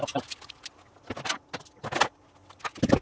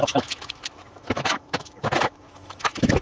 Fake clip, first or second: second